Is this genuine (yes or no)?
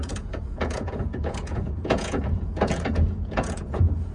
no